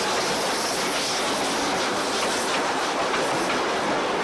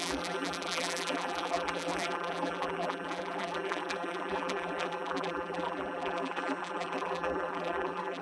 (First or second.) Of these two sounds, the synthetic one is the second